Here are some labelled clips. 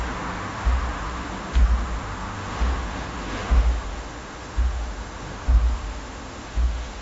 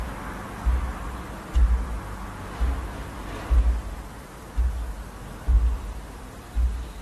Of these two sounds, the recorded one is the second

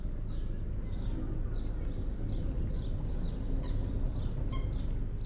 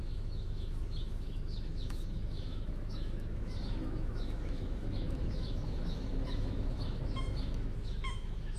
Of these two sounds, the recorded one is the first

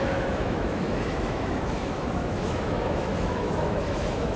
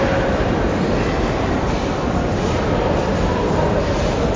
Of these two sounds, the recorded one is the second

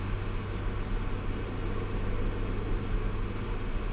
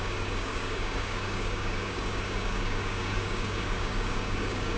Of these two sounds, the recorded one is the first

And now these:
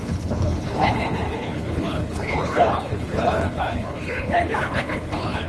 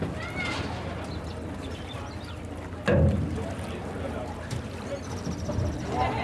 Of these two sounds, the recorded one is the second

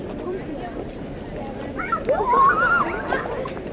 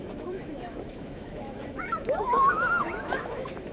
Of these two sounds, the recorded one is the first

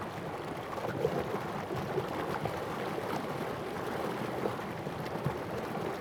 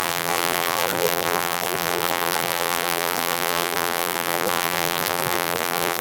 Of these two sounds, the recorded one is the first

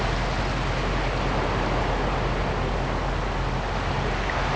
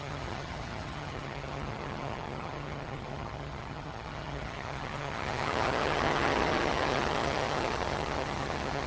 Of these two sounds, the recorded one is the first